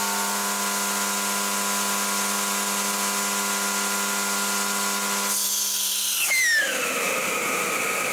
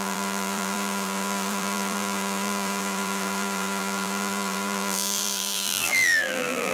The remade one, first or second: second